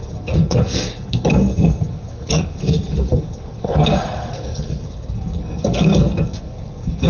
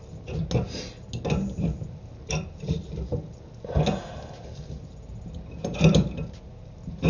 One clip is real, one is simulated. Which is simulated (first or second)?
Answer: first